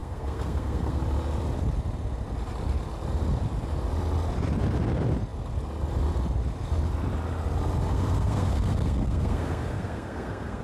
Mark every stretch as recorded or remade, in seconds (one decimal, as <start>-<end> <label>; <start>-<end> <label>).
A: 0.0-1.0 remade; 1.0-7.9 recorded; 7.9-10.6 remade

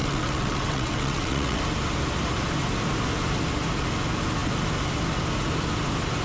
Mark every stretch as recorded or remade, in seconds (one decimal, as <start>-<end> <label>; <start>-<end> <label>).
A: 0.0-1.6 remade; 1.6-6.2 recorded

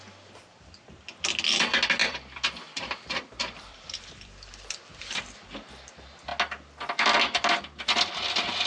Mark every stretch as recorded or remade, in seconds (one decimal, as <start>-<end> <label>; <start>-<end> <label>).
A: 0.0-2.0 recorded; 2.0-4.5 remade; 4.5-8.7 recorded

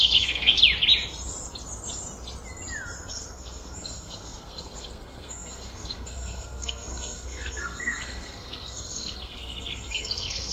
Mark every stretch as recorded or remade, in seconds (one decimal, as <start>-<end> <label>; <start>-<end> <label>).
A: 0.0-0.6 remade; 0.6-3.1 recorded; 3.1-10.5 remade

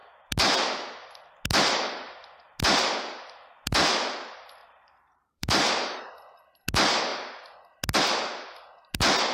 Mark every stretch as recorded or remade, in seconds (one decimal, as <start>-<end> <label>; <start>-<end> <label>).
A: 0.0-4.6 recorded; 4.6-6.1 remade; 6.1-9.3 recorded